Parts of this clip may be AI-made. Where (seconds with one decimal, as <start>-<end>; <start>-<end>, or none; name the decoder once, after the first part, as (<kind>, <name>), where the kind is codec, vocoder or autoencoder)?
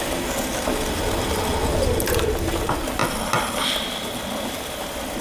none